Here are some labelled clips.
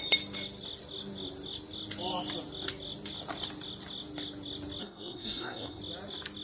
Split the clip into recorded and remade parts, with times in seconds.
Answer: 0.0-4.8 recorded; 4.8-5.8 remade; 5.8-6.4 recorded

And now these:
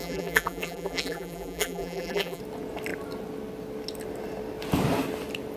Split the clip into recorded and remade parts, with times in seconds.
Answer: 0.0-2.4 remade; 2.4-5.6 recorded

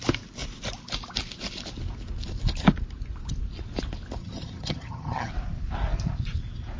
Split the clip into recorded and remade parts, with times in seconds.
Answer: 0.0-4.2 recorded; 4.2-5.3 remade; 5.3-6.8 recorded

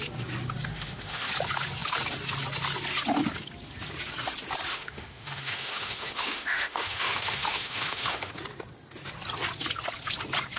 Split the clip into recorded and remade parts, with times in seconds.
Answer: 0.0-0.7 recorded; 0.7-1.3 remade; 1.3-4.7 recorded; 4.7-8.3 remade; 8.3-10.6 recorded

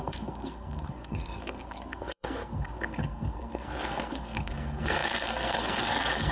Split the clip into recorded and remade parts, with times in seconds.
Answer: 0.0-6.3 remade

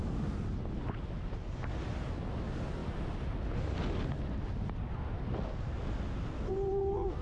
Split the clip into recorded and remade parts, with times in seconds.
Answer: 0.0-7.2 recorded